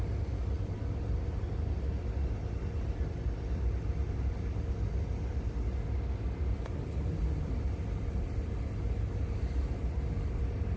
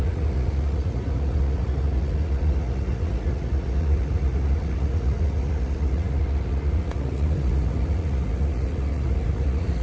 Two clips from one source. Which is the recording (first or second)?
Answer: first